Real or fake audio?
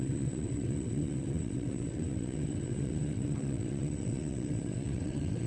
fake